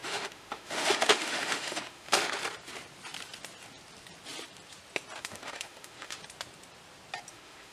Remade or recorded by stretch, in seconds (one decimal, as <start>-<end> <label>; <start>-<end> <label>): 0.0-2.4 remade; 2.4-5.2 recorded; 5.2-6.2 remade; 6.2-7.3 recorded; 7.3-7.7 remade